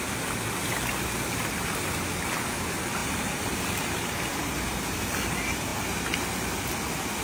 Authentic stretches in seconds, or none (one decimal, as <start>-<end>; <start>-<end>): 0.0-3.0; 4.2-7.2